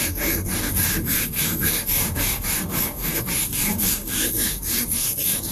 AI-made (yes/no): yes